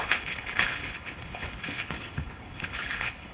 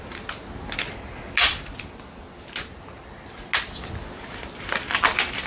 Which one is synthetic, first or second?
first